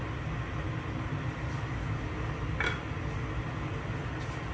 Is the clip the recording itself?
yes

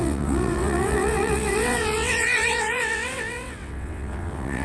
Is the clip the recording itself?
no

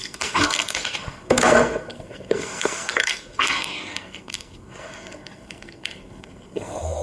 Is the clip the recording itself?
no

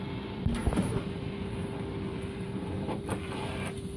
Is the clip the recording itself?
yes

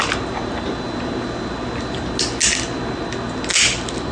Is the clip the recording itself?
yes